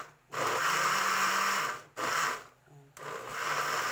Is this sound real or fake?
real